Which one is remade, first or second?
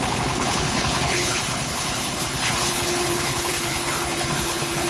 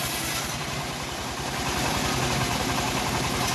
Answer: first